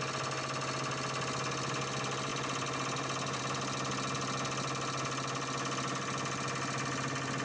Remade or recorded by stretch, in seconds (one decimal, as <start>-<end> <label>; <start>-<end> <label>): 0.0-7.4 recorded